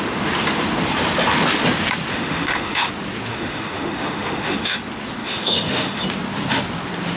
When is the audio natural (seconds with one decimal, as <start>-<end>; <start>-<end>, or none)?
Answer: 0.0-2.1; 2.9-3.3; 4.8-5.2; 6.0-7.2